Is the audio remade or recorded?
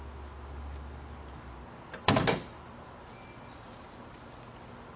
recorded